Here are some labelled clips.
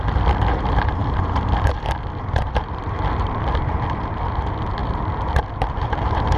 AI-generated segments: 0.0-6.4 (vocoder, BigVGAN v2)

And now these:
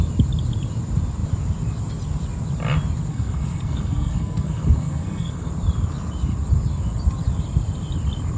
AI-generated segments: 3.1-5.5 (codec, SNAC)

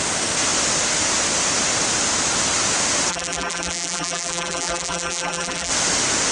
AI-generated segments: 3.1-5.7 (vocoder, BigVGAN v2)

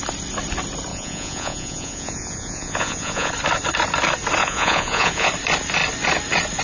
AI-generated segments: 0.9-3.3 (vocoder, Vocos); 4.4-5.3

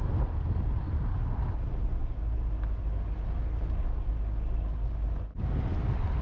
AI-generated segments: none

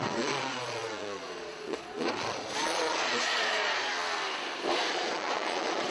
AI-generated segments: 0.0-3.9 (vocoder, Vocos); 4.9-5.9

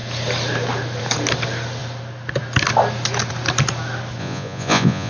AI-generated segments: 4.2-5.1 (vocoder, Vocos)

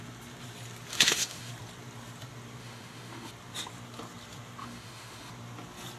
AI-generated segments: 0.9-1.5 (autoencoder, DAC-VAE); 2.6-3.3; 4.6-5.3